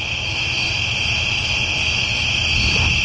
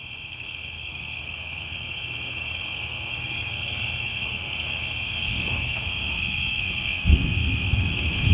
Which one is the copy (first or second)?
second